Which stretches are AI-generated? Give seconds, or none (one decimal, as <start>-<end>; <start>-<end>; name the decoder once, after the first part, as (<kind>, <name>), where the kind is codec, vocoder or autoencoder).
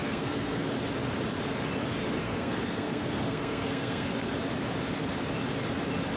0.0-0.6 (codec, SNAC); 2.2-4.3